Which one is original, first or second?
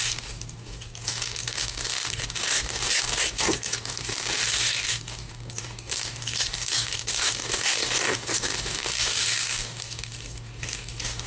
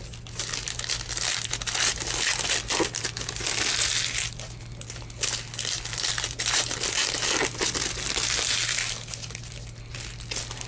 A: second